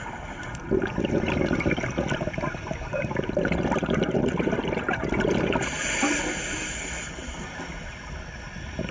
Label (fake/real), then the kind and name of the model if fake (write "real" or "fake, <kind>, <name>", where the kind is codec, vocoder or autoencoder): real